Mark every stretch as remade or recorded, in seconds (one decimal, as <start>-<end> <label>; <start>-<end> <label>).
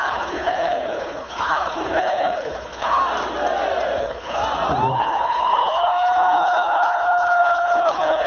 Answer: 0.0-3.0 remade; 3.0-4.0 recorded; 4.0-4.4 remade; 4.4-4.9 recorded; 4.9-8.3 remade